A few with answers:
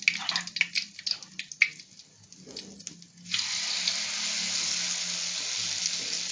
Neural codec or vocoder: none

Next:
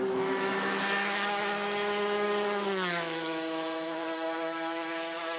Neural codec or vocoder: autoencoder, DAC-VAE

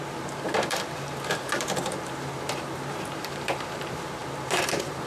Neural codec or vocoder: vocoder, BigVGAN v2